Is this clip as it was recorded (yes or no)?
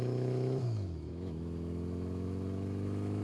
no